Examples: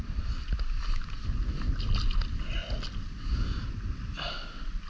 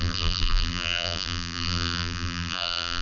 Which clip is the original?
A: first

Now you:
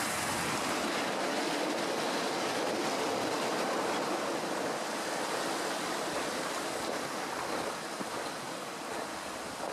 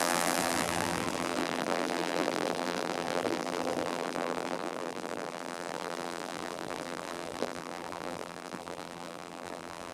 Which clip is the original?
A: first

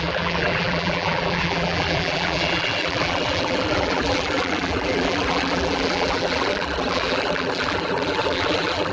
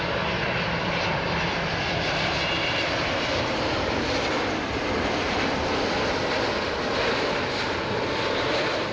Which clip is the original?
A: second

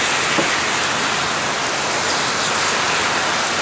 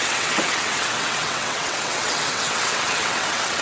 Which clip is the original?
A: first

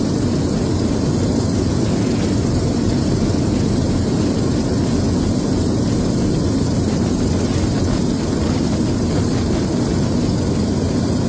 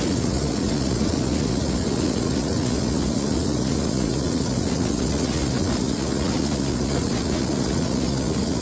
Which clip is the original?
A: first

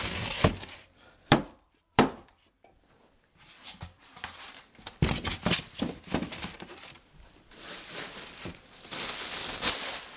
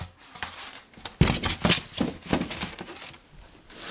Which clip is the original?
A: second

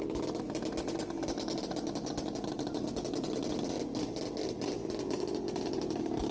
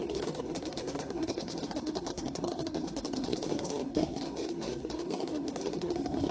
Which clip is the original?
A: first